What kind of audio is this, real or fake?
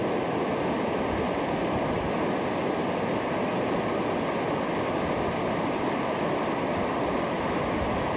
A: real